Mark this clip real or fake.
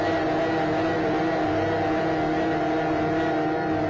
real